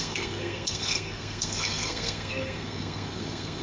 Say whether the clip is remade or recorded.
remade